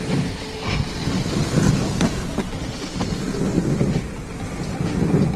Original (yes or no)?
yes